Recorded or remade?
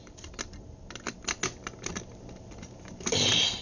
recorded